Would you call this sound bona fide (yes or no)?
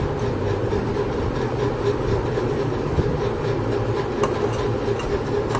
yes